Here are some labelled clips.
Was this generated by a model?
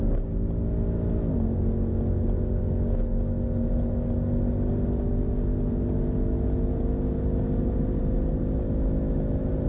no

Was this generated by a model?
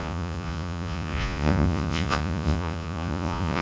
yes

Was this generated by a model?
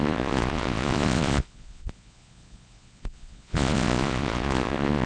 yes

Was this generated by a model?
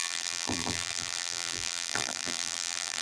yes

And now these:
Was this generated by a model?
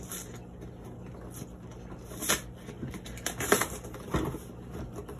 no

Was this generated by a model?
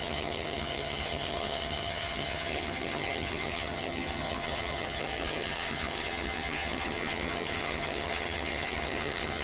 yes